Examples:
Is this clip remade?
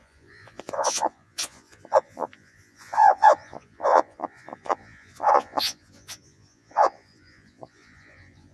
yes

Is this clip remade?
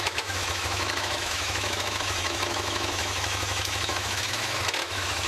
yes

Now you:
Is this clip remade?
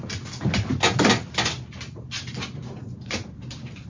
no